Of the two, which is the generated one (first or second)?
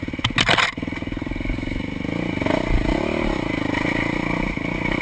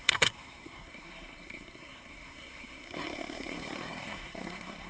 second